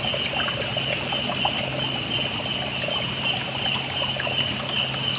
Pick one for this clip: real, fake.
real